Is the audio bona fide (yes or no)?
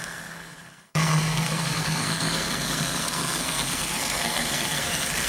no